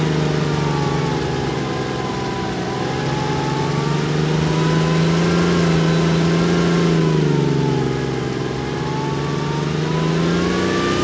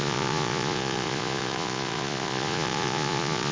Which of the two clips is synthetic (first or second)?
second